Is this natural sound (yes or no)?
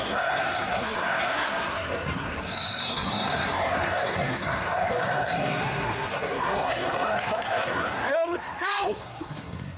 no